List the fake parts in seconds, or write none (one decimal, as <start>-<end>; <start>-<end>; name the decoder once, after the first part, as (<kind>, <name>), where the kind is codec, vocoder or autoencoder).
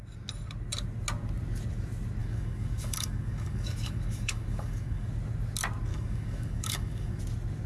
2.2-5.1 (codec, DAC); 5.9-7.2